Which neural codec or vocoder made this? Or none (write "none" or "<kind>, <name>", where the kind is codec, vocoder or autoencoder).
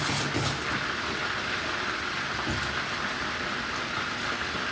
none